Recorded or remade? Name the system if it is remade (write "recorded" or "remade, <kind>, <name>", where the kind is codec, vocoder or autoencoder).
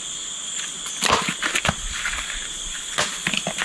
recorded